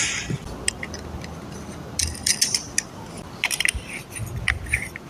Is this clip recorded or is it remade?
recorded